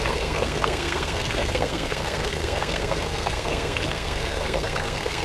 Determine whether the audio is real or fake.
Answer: fake